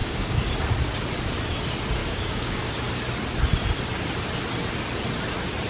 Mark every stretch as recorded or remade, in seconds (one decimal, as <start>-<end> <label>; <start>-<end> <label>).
0.0-0.5 remade; 0.5-2.0 recorded; 2.0-2.7 remade; 2.7-5.7 recorded